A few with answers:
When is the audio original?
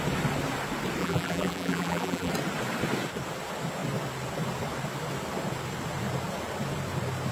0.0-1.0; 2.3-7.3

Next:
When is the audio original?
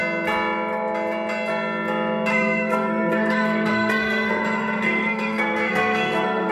0.0-2.3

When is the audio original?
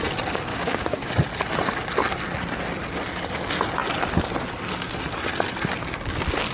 0.0-0.5; 1.1-6.5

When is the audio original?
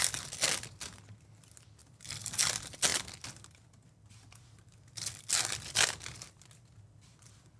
0.0-7.6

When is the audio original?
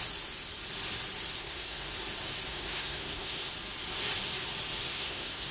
0.0-1.4; 1.9-2.5; 3.5-4.9